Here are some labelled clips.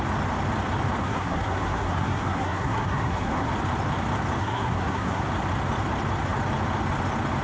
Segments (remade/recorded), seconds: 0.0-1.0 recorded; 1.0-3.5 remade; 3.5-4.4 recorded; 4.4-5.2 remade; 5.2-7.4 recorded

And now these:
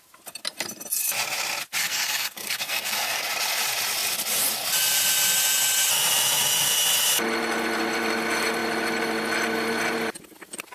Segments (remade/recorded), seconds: 0.0-1.8 recorded; 1.8-3.2 remade; 3.2-10.7 recorded

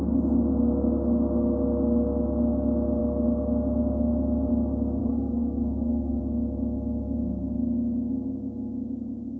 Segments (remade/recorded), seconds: 0.0-5.0 recorded; 5.0-6.2 remade; 6.2-9.4 recorded

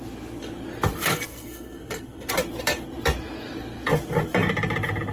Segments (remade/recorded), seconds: 0.0-1.1 recorded; 1.1-2.3 remade; 2.3-5.1 recorded

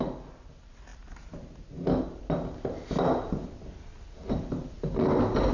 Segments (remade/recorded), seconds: 0.0-5.5 recorded

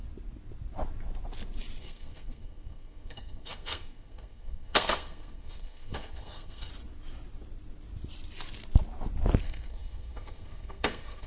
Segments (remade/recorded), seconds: 0.0-1.8 recorded; 1.8-6.7 remade; 6.7-9.4 recorded; 9.4-11.3 remade

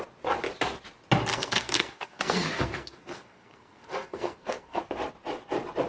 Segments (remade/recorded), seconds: 0.0-1.3 recorded; 1.3-4.8 remade; 4.8-5.9 recorded